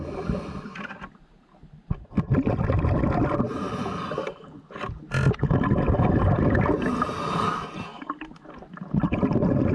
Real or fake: real